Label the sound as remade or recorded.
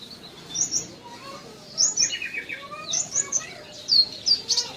remade